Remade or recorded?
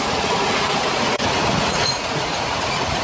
remade